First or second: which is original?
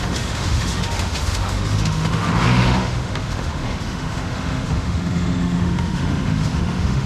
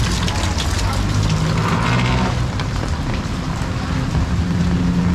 second